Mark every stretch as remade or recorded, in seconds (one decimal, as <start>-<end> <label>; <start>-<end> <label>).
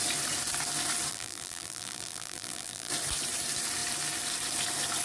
0.0-1.1 recorded; 1.1-2.9 remade; 2.9-5.0 recorded